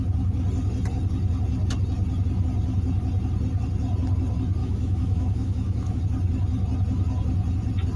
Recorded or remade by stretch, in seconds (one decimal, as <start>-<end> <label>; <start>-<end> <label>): 0.0-4.6 recorded; 4.6-6.0 remade; 6.0-8.0 recorded